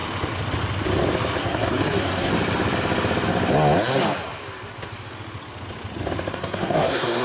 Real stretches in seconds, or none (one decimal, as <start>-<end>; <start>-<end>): 0.0-1.4; 2.3-6.3